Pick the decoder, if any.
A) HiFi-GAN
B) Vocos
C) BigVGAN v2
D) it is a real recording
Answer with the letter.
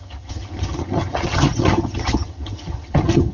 A